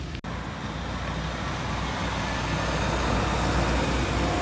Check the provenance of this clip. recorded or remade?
recorded